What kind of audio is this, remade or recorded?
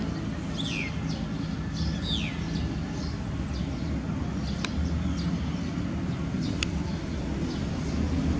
recorded